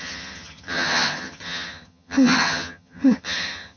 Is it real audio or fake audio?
fake